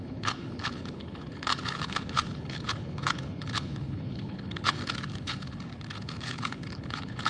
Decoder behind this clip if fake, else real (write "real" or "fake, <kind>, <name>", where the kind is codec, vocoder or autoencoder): fake, codec, HILCodec